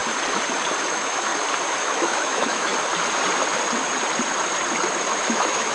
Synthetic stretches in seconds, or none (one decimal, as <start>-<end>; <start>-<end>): 0.9-1.3; 1.8-2.7; 5.3-5.7